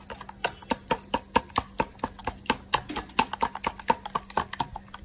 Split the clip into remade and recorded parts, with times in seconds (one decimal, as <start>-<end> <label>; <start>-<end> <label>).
0.0-5.0 recorded